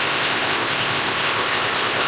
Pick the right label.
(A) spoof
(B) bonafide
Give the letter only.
A